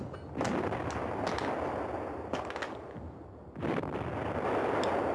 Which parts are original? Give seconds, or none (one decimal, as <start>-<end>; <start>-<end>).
0.0-5.1